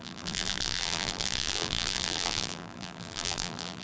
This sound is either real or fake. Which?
fake